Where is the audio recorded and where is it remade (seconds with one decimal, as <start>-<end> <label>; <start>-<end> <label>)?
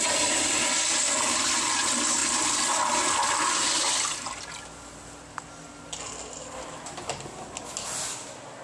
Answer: 0.0-8.6 recorded